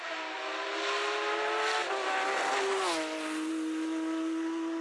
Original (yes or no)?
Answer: yes